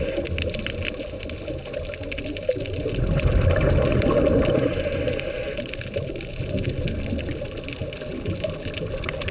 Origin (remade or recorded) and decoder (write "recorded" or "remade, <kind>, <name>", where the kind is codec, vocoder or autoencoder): recorded